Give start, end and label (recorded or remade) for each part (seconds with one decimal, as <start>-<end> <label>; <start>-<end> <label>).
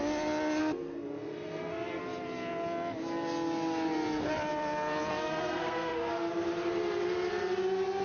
0.0-0.6 recorded; 0.6-2.0 remade; 2.0-5.1 recorded; 5.1-6.1 remade; 6.1-8.0 recorded